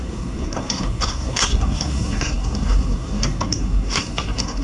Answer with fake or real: fake